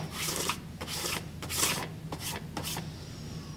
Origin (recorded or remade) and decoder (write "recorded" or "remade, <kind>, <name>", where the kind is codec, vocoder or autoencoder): recorded